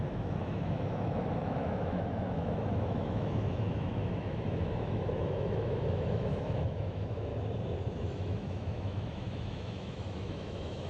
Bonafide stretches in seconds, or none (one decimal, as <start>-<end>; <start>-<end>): 7.3-8.0